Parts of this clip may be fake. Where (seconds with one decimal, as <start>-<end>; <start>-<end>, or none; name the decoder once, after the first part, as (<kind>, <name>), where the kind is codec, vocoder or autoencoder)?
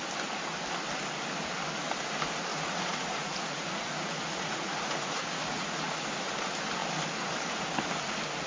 2.5-6.3 (vocoder, Vocos)